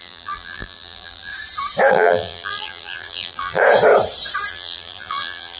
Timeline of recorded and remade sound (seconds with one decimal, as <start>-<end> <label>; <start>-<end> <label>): 0.0-1.3 remade; 1.3-1.9 recorded; 1.9-3.6 remade; 3.6-4.5 recorded; 4.5-5.6 remade

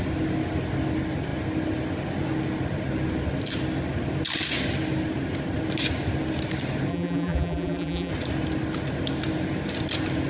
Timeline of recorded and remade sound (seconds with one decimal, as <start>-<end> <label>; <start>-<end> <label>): 0.0-6.9 recorded; 6.9-8.1 remade; 8.1-10.3 recorded